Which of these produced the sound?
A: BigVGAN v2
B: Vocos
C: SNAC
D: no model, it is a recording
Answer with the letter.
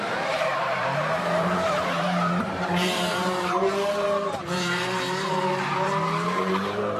A